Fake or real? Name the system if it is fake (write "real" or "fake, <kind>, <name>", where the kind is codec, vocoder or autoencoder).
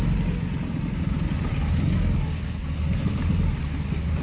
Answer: real